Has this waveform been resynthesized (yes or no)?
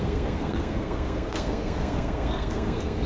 yes